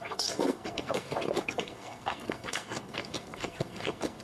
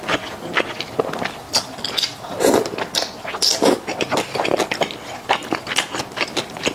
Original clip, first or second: second